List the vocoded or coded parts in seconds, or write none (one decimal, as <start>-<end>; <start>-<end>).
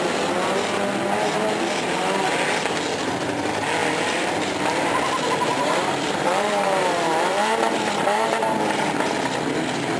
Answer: 3.8-4.9; 5.5-8.4